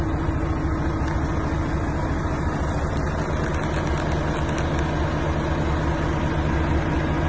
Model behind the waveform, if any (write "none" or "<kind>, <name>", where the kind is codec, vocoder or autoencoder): none